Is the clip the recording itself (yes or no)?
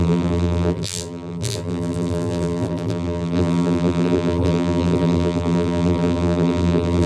no